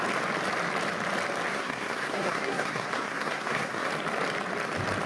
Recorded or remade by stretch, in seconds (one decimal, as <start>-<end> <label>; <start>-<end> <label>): 0.0-1.5 recorded; 1.5-3.9 remade; 3.9-5.1 recorded